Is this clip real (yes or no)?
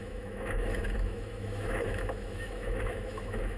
no